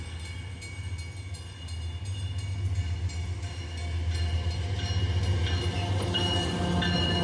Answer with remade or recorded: recorded